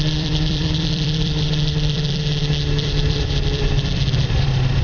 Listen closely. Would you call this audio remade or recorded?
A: remade